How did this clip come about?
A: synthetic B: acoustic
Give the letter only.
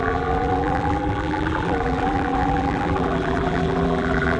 A